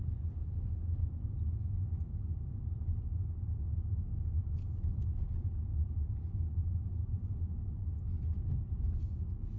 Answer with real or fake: real